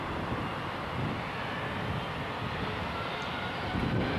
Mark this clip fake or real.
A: real